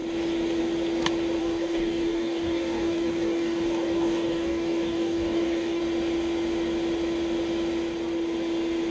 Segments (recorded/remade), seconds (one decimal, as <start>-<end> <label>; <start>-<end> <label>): 0.0-1.4 recorded; 1.4-5.8 remade; 5.8-8.9 recorded